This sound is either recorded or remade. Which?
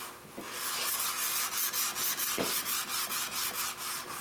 recorded